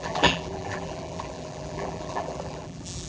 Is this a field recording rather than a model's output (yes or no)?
no